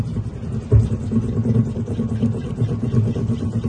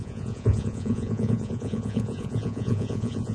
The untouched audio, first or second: first